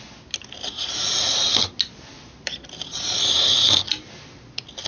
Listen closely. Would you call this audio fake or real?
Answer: real